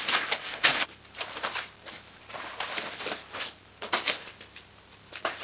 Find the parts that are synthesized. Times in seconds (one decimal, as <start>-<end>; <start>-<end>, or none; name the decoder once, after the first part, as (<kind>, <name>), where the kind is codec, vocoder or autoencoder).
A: 0.0-5.4 (vocoder, BigVGAN v2)